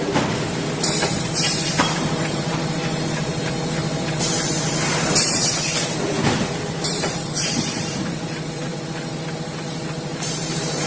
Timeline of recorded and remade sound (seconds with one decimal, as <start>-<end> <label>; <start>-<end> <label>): 0.0-8.7 remade; 8.7-9.3 recorded; 9.3-10.9 remade

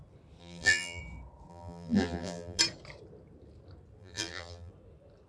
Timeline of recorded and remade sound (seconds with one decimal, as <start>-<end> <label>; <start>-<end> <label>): 0.0-0.4 recorded; 0.4-1.0 remade; 1.0-1.5 recorded; 1.5-2.6 remade; 2.6-4.0 recorded; 4.0-4.7 remade; 4.7-5.3 recorded

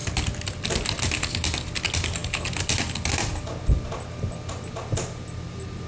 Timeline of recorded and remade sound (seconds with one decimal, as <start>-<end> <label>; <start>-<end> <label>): 0.0-5.9 recorded